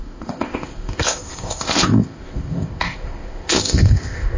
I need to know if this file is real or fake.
fake